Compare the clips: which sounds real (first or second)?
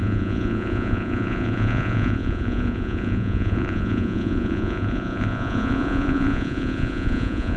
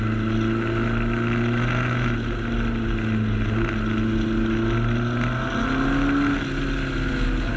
second